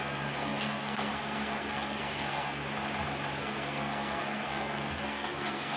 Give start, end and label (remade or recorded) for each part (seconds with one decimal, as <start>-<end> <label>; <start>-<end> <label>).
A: 0.0-2.6 remade; 2.6-3.4 recorded; 3.4-5.8 remade

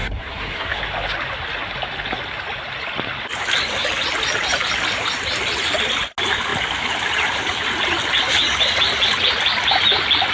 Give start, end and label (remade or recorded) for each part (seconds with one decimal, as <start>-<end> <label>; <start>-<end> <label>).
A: 0.0-0.8 remade; 0.8-10.3 recorded

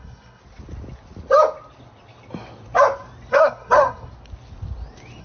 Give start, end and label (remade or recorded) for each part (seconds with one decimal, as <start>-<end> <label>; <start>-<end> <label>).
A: 0.0-0.4 remade; 0.4-3.3 recorded; 3.3-4.1 remade; 4.1-5.2 recorded

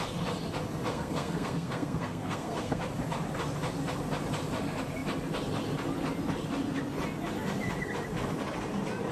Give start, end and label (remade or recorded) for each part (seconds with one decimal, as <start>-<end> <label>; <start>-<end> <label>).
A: 0.0-0.9 recorded; 0.9-2.8 remade; 2.8-9.1 recorded

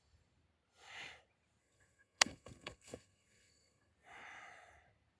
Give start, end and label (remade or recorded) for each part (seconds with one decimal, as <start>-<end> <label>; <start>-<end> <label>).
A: 0.0-1.6 recorded; 1.6-3.9 remade; 3.9-5.2 recorded

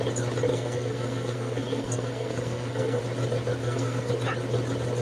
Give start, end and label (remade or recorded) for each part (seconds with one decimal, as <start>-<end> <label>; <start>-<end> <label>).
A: 0.0-0.5 recorded; 0.5-3.0 remade; 3.0-3.6 recorded; 3.6-4.1 remade; 4.1-5.0 recorded